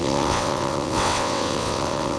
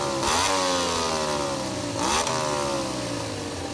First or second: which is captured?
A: second